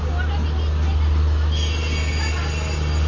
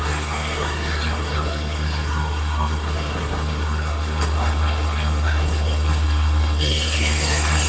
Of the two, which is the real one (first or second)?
first